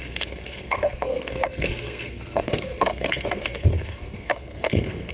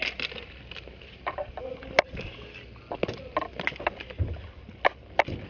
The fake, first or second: first